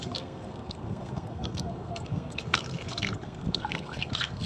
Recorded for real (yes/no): no